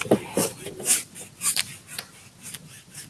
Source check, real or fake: real